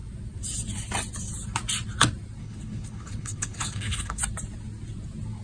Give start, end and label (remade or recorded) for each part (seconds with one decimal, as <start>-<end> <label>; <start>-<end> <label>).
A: 0.0-2.4 recorded; 2.4-4.2 remade; 4.2-5.4 recorded